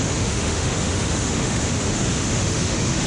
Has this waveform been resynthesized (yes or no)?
yes